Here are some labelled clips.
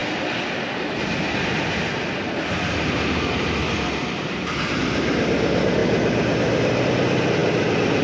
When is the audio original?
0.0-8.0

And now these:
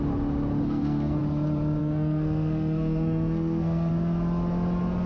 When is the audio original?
0.0-0.6; 1.2-1.8; 3.9-5.1

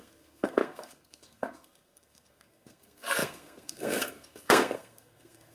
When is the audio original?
none

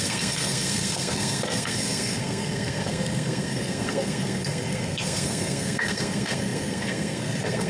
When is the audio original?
none

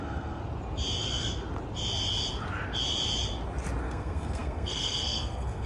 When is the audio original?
0.4-3.8

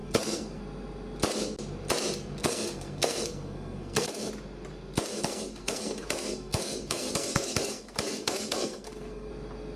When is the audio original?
0.6-2.4; 4.3-5.1; 9.3-9.8